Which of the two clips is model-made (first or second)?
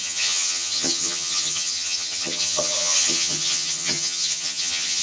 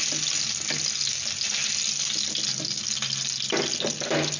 first